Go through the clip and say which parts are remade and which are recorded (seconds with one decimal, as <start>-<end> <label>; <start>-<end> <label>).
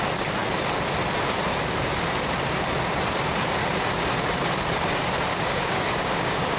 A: 0.0-5.3 recorded; 5.3-6.6 remade